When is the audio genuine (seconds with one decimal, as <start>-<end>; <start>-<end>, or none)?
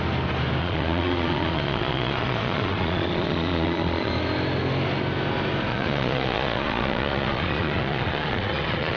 0.0-0.6; 4.1-5.7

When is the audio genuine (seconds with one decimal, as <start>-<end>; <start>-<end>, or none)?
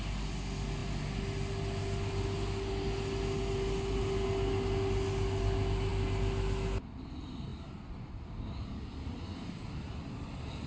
0.0-10.7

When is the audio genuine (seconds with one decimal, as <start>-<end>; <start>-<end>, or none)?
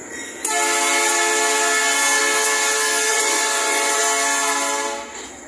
0.0-3.1; 4.0-5.5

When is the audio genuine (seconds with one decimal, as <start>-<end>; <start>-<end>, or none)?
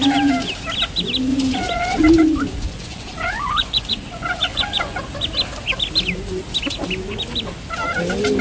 0.0-1.3; 2.0-2.6; 5.0-8.4